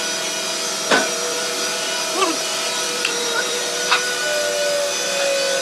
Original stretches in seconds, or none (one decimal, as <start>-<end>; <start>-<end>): 0.0-1.0; 3.6-5.6

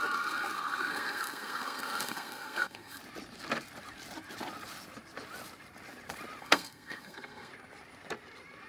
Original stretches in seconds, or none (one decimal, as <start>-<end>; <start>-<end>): 3.0-6.4; 7.5-8.7

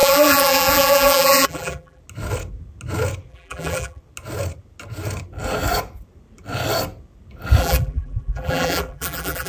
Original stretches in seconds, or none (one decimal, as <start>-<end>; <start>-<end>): 2.0-3.3; 4.0-7.6

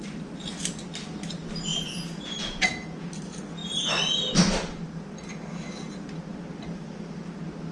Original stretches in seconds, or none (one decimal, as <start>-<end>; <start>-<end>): 0.0-1.7; 3.1-7.7

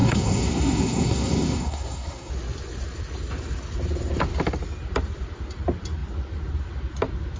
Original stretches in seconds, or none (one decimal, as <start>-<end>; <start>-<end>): 2.3-7.4

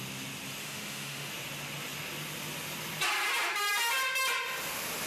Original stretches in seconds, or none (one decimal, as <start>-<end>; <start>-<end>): 0.0-0.6; 1.3-5.1

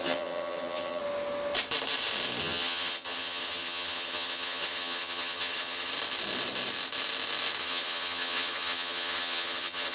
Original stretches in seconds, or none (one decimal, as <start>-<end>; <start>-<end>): 1.0-2.4; 5.9-7.6